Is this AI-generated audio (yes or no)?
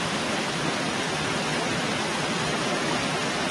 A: no